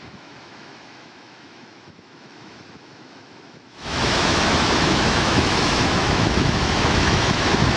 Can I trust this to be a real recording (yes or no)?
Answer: no